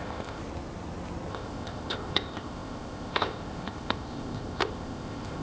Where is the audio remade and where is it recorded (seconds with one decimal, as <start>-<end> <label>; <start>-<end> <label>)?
0.0-0.4 remade; 0.4-1.3 recorded; 1.3-5.4 remade